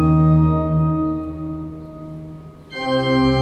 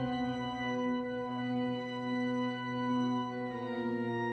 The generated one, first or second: second